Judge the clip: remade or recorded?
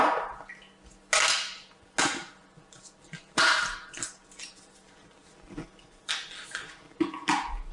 recorded